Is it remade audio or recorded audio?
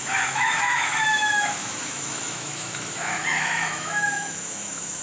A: remade